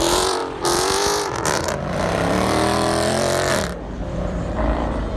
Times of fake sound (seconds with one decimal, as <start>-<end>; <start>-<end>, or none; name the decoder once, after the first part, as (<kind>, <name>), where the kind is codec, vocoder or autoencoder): 0.0-5.2 (vocoder, BigVGAN v2)

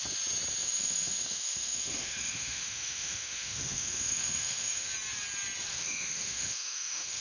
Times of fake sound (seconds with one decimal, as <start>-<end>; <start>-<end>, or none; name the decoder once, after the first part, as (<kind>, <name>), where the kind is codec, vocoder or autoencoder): 0.6-4.9 (autoencoder, DAC-VAE); 5.7-7.2

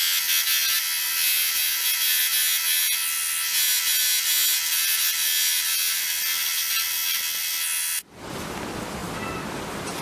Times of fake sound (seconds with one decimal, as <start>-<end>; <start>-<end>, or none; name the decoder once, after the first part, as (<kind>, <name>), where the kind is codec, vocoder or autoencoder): none